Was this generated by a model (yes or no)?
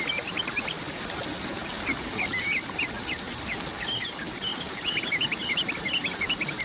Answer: no